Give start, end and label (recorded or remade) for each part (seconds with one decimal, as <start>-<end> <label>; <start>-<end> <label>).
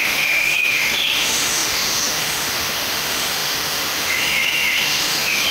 0.0-5.5 remade